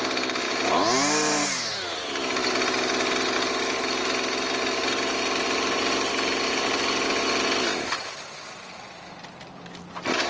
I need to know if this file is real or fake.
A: real